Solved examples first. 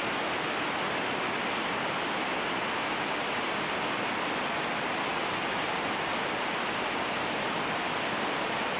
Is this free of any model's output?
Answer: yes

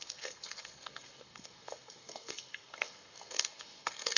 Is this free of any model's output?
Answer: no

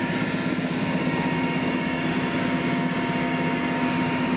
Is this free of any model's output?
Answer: no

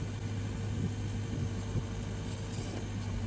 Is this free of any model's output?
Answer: yes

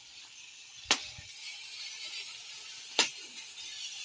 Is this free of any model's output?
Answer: yes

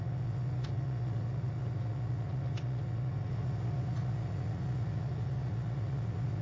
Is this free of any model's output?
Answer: no